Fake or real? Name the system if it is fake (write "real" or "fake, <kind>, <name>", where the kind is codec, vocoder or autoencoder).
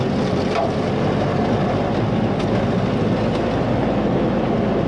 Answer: real